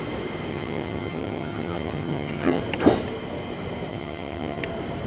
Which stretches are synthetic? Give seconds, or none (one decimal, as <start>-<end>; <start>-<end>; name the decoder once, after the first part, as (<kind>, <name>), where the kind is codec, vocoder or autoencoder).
0.5-2.6 (vocoder, HiFi-GAN); 3.9-4.6

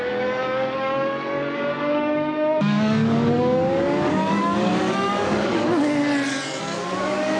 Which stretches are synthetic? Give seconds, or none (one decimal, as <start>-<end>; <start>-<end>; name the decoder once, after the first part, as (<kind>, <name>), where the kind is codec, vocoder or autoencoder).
0.0-6.0 (codec, DAC); 6.6-7.4

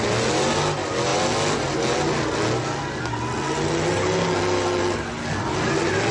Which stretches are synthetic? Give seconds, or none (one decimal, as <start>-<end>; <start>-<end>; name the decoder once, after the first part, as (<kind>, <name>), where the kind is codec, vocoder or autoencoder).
none

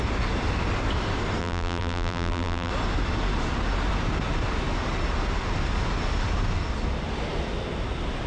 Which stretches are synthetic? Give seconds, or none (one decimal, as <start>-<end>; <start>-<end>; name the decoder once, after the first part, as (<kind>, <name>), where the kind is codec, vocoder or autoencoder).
1.4-2.7 (vocoder, BigVGAN v2)

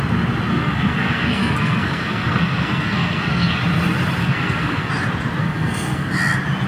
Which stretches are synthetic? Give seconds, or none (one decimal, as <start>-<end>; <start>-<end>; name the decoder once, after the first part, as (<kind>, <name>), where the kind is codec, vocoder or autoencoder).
0.5-3.6 (codec, SNAC); 4.2-4.9; 5.4-6.1

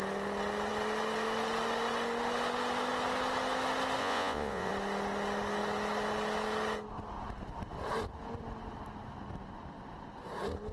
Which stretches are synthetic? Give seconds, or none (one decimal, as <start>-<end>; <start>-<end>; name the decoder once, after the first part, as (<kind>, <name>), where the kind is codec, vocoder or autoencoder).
4.0-4.7 (vocoder, Vocos)

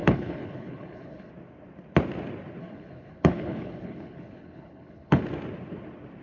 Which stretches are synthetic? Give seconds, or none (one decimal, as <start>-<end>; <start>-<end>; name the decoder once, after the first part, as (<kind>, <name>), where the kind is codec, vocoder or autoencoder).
0.0-1.3 (codec, HILCodec); 2.6-5.2

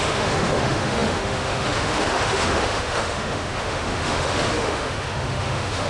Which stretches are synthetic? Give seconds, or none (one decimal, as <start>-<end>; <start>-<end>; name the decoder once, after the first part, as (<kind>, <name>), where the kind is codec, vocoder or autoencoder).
0.0-5.9 (autoencoder, DAC-VAE)